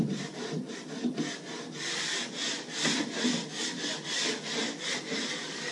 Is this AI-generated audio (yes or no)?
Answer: no